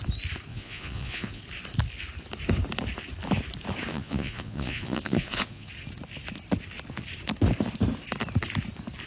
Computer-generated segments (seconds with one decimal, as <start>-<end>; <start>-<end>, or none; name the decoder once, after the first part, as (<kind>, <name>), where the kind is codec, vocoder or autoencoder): 0.5-1.4 (vocoder, Vocos); 3.9-5.7